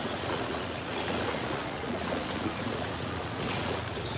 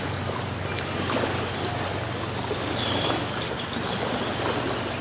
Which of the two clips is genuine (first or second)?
second